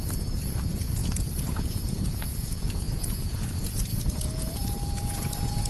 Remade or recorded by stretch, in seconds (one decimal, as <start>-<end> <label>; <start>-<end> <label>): 0.0-5.7 remade